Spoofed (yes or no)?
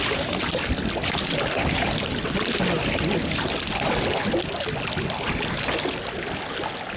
no